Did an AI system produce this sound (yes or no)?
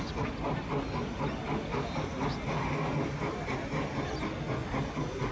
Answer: no